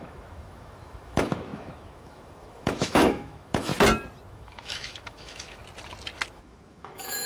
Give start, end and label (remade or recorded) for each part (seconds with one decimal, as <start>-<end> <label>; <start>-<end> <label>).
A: 0.0-3.7 remade; 3.7-4.3 recorded; 4.3-5.6 remade; 5.6-6.3 recorded; 6.3-7.3 remade